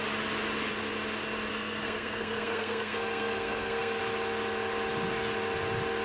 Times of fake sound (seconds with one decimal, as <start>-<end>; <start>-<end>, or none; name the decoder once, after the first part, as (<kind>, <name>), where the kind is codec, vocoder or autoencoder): 1.5-4.0 (codec, SNAC)

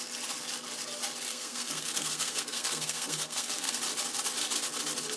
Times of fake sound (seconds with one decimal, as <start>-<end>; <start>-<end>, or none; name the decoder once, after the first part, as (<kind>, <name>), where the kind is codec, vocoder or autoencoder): 1.3-3.8 (codec, SNAC)

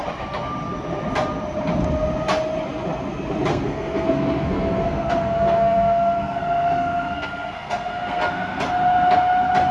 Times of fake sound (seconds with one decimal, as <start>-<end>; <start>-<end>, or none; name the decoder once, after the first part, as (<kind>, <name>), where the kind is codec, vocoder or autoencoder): 3.5-8.6 (codec, SNAC)

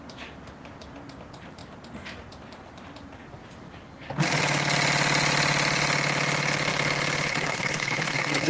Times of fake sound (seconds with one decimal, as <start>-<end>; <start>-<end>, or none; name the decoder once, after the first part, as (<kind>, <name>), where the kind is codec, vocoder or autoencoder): 7.3-8.5 (codec, SNAC)

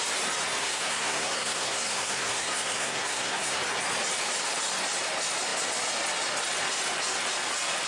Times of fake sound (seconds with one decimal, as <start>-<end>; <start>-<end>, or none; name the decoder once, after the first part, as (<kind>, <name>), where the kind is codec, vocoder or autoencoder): 0.6-3.6 (codec, SNAC)

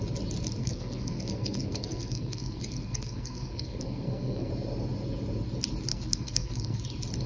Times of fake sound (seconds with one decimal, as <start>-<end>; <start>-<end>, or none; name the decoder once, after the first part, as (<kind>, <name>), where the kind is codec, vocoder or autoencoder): 0.6-4.5 (codec, SNAC); 5.9-6.8

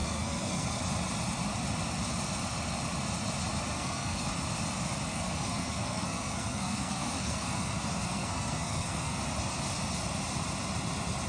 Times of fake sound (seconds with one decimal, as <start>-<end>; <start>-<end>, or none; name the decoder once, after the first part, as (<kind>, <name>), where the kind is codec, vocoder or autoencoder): 0.0-0.8 (codec, SNAC); 3.7-4.3; 5.1-9.2